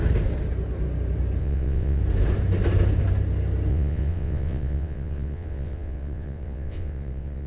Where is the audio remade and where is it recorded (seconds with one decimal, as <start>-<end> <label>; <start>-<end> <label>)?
0.0-1.4 recorded; 1.4-2.0 remade; 2.0-3.7 recorded; 3.7-7.5 remade